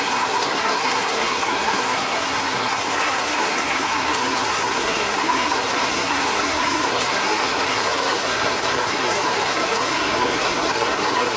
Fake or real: fake